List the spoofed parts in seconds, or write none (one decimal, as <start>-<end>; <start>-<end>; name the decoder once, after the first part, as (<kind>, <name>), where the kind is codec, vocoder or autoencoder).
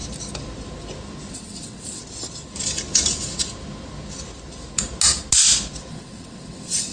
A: 1.3-2.0 (vocoder, WaveNeXt); 5.9-6.9